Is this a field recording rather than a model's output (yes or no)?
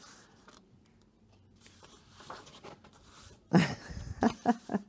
no